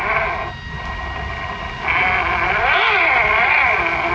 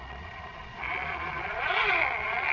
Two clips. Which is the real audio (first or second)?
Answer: first